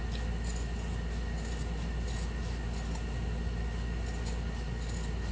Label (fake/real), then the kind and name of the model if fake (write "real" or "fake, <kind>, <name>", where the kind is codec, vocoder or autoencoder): real